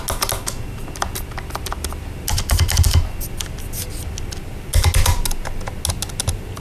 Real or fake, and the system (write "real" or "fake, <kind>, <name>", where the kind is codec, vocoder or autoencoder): real